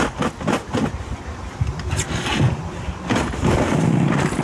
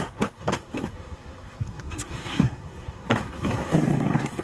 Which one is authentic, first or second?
first